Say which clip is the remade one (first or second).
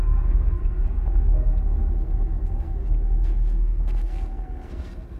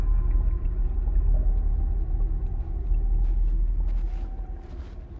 first